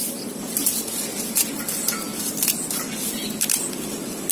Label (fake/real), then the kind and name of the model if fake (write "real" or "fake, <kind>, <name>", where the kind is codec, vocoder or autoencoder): real